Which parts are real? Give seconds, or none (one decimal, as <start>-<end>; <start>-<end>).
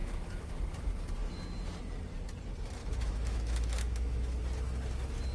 0.5-2.8; 4.4-5.3